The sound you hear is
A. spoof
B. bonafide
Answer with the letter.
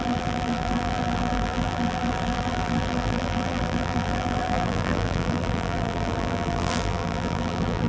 A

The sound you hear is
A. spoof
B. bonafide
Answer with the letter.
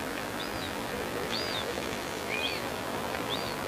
A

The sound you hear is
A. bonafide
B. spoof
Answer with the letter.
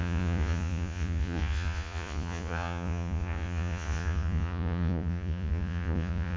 B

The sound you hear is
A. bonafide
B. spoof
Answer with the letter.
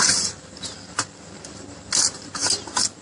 A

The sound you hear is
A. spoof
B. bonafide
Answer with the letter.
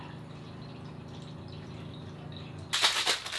B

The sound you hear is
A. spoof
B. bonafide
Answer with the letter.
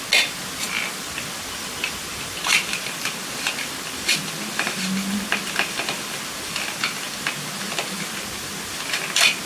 B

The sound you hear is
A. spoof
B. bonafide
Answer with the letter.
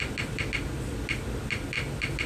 B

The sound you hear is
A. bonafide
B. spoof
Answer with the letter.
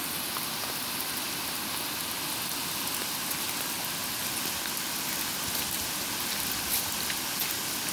A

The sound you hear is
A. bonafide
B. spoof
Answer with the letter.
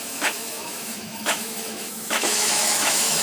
B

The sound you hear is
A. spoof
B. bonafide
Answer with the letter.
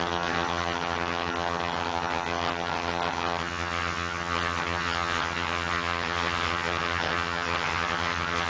A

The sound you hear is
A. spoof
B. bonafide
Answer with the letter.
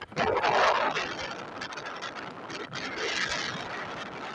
B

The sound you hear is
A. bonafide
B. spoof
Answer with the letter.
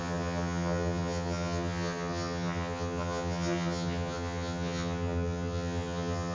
B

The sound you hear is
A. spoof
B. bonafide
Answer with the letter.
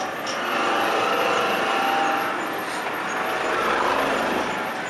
B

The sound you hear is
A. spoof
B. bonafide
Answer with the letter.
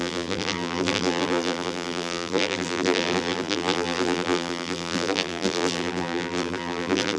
A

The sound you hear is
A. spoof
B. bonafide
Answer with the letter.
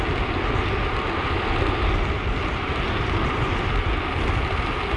B